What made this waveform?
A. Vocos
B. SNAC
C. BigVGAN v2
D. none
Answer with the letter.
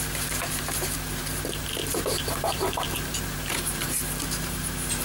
C